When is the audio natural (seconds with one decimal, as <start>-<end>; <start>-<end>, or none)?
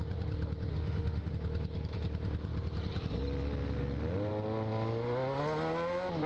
0.0-0.7; 1.3-6.3